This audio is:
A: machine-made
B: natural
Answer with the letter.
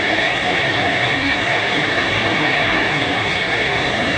A